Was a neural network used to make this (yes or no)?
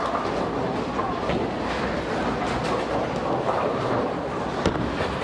no